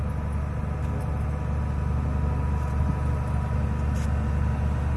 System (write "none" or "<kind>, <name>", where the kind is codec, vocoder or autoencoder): none